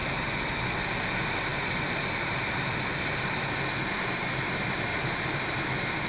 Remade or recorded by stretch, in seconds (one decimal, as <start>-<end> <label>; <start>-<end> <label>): 0.0-4.9 recorded; 4.9-5.6 remade; 5.6-6.1 recorded